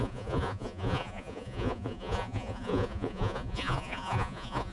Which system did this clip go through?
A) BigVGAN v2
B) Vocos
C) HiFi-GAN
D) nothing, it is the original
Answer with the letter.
B